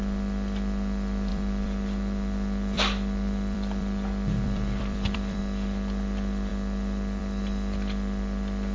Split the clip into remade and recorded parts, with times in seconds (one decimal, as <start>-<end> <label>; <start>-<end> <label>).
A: 0.0-1.3 recorded; 1.3-5.4 remade; 5.4-8.7 recorded